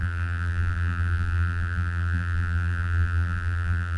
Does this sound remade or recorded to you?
remade